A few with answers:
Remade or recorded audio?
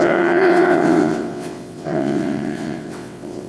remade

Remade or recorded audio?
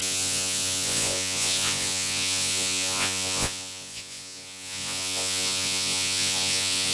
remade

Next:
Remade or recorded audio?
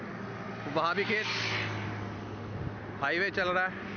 recorded